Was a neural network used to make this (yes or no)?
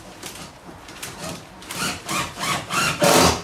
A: yes